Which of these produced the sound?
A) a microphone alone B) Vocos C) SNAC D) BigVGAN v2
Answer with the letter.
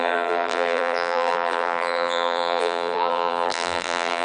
D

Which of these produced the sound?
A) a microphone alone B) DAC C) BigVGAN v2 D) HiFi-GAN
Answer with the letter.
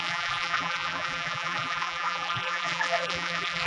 C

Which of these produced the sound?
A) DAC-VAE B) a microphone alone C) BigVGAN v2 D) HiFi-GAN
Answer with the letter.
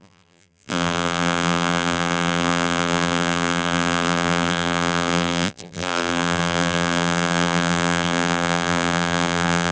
C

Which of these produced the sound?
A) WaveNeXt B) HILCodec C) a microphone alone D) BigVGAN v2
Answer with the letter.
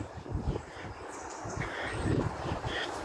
D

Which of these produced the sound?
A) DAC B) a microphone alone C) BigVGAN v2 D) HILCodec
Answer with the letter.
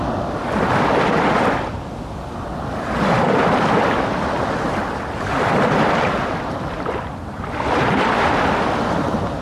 B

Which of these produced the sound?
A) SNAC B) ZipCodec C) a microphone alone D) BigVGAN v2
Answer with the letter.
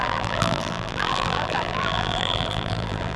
D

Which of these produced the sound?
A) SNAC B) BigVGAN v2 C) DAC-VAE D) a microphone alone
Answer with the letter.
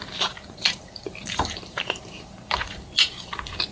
B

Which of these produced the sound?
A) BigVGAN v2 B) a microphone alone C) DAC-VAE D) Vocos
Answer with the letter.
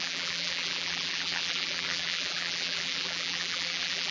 A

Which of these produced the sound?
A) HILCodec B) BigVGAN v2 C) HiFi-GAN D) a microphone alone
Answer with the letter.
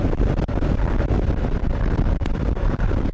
B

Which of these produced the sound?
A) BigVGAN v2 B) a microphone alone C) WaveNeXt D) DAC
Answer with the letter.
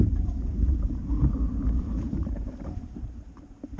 A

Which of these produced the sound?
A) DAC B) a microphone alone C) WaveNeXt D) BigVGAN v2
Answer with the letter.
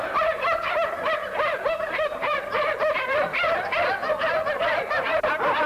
D